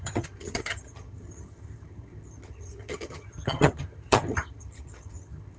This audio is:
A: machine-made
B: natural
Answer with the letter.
A